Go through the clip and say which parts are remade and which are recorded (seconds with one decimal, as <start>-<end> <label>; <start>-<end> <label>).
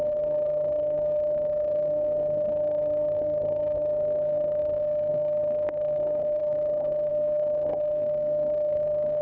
0.0-9.2 remade